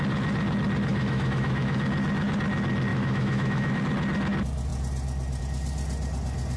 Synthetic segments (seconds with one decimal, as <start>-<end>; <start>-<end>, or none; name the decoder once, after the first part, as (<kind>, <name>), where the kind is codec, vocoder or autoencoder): 0.9-1.8 (autoencoder, DAC-VAE); 2.9-3.8